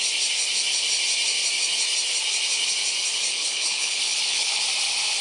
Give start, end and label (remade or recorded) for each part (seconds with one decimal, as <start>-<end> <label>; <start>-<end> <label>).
0.0-3.3 recorded; 3.3-4.6 remade; 4.6-5.2 recorded

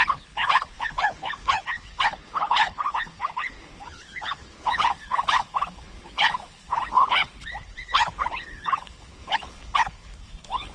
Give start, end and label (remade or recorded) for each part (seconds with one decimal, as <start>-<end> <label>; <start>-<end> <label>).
0.0-10.7 remade

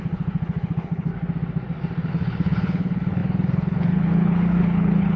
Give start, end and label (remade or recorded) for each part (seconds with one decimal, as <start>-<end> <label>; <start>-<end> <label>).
0.0-1.1 remade; 1.1-2.1 recorded; 2.1-5.2 remade

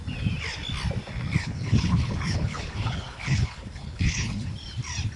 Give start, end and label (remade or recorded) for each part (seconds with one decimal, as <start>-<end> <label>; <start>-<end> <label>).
0.0-1.4 recorded; 1.4-4.5 remade; 4.5-5.2 recorded

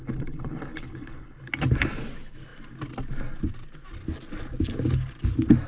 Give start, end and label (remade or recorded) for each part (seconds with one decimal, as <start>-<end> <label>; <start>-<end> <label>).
0.0-1.5 remade; 1.5-5.7 recorded

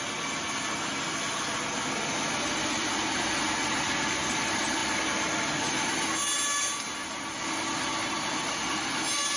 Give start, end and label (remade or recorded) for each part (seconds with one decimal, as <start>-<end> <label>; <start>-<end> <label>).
0.0-9.4 recorded